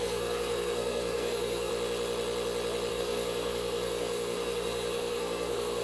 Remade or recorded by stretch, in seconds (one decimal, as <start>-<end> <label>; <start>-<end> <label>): 0.0-1.7 remade; 1.7-2.9 recorded; 2.9-5.8 remade